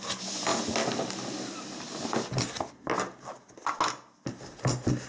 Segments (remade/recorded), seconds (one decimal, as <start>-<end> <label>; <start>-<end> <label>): 0.0-5.1 recorded